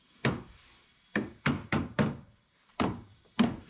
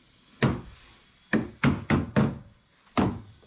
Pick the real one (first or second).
second